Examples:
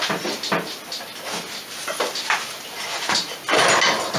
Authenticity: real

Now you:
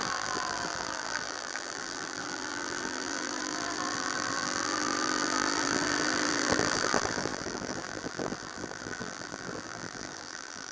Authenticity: fake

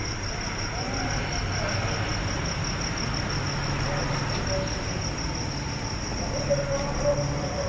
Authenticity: real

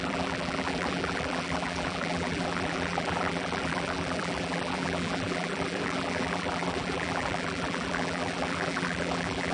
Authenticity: fake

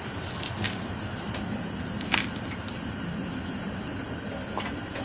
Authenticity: real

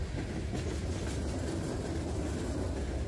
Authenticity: real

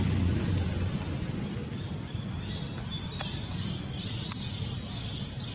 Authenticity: real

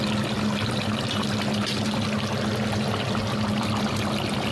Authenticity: real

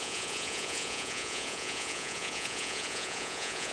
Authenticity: fake